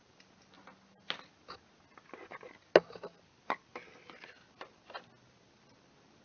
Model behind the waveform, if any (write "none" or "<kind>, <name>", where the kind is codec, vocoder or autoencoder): none